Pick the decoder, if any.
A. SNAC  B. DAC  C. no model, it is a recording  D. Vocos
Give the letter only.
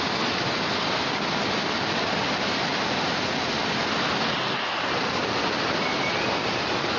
C